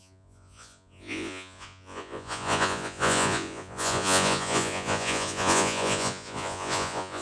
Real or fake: fake